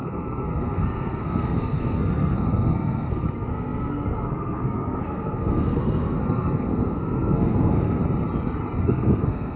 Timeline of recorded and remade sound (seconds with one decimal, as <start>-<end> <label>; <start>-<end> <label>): 0.0-8.0 remade; 8.0-8.8 recorded; 8.8-9.6 remade

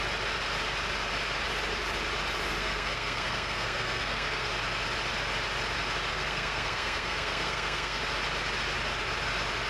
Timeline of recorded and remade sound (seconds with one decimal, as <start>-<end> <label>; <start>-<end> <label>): 0.0-2.6 recorded; 2.6-4.5 remade; 4.5-6.1 recorded; 6.1-8.0 remade; 8.0-9.7 recorded

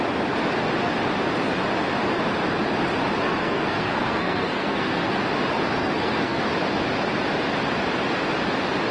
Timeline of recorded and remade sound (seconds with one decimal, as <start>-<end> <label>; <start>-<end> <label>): 0.0-3.4 recorded; 3.4-5.2 remade; 5.2-5.8 recorded; 5.8-6.4 remade; 6.4-8.9 recorded

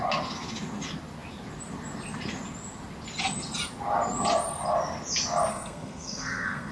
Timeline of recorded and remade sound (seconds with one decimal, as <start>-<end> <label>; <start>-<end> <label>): 0.0-5.5 recorded; 5.5-6.7 remade

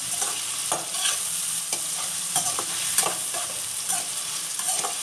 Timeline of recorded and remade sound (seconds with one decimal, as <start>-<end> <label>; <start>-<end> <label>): 0.0-5.0 recorded

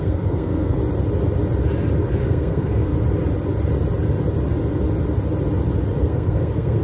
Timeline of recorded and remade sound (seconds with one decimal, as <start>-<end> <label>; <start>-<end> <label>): 0.0-0.8 remade; 0.8-2.2 recorded; 2.2-2.9 remade; 2.9-6.0 recorded; 6.0-6.8 remade